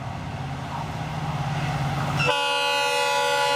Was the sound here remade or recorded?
recorded